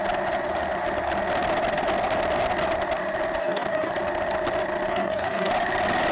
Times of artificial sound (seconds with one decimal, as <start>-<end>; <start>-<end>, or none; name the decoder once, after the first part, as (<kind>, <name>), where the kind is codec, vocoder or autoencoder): 3.4-3.9 (codec, DAC); 4.9-5.5